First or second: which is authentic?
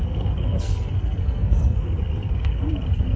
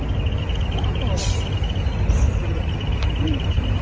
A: second